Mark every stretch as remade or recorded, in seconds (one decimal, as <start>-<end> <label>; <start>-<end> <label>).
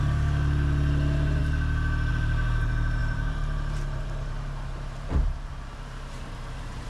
0.0-1.4 remade; 1.4-2.1 recorded; 2.1-6.9 remade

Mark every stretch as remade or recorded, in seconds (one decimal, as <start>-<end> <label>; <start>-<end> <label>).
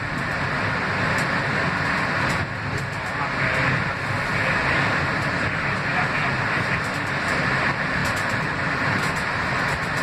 0.0-8.0 recorded; 8.0-9.0 remade; 9.0-10.0 recorded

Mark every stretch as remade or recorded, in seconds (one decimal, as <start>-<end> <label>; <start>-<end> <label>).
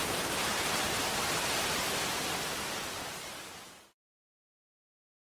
0.0-1.8 remade; 1.8-5.3 recorded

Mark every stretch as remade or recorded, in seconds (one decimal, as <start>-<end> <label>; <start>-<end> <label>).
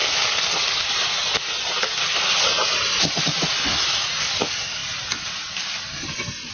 0.0-6.5 recorded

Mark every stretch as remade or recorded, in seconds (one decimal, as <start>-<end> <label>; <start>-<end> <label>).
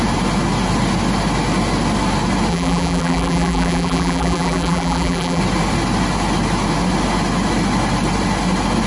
0.0-2.5 recorded; 2.5-5.4 remade; 5.4-8.9 recorded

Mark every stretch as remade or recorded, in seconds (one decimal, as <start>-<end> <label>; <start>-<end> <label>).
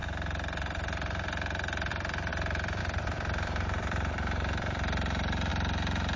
0.0-1.9 recorded; 1.9-5.5 remade; 5.5-6.2 recorded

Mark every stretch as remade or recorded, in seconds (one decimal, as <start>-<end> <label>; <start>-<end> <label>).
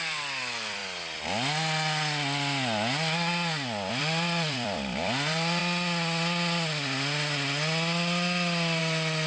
0.0-0.8 remade; 0.8-3.9 recorded; 3.9-5.6 remade; 5.6-8.8 recorded; 8.8-9.3 remade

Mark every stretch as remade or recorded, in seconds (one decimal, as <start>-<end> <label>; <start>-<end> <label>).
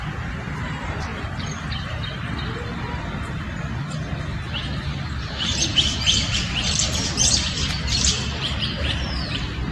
0.0-9.7 remade